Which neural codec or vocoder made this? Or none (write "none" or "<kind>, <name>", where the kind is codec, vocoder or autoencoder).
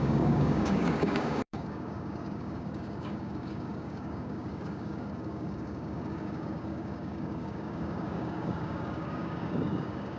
codec, DAC